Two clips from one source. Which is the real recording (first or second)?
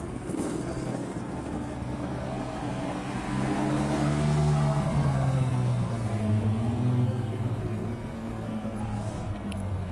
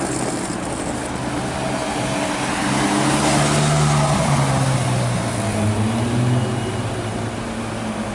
second